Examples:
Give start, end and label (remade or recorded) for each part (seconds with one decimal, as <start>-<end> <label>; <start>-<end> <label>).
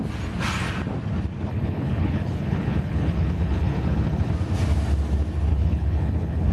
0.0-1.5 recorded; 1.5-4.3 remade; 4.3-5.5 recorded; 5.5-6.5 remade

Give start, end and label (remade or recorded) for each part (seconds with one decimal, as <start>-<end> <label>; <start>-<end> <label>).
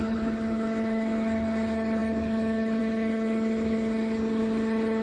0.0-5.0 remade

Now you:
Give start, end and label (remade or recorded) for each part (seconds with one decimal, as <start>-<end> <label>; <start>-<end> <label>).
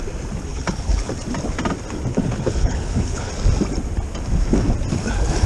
0.0-0.5 recorded; 0.5-1.1 remade; 1.1-2.1 recorded; 2.1-3.3 remade; 3.3-5.5 recorded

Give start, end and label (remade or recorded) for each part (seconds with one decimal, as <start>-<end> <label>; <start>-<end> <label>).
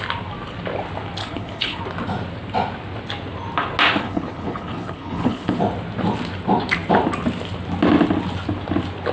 0.0-1.2 recorded; 1.2-1.8 remade; 1.8-4.0 recorded; 4.0-5.6 remade; 5.6-9.1 recorded